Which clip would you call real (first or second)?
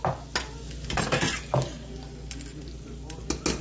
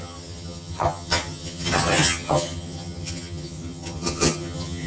first